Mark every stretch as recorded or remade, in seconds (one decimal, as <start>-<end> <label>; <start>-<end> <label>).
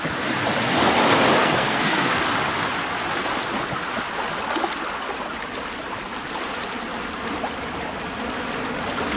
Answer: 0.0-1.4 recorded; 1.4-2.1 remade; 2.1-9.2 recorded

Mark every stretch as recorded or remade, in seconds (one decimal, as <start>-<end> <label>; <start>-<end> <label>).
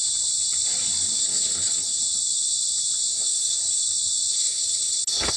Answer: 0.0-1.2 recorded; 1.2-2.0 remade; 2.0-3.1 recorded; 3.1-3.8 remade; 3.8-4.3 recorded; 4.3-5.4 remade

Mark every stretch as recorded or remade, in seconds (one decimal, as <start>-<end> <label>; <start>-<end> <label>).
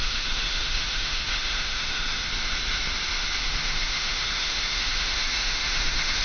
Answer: 0.0-2.3 remade; 2.3-3.4 recorded; 3.4-6.2 remade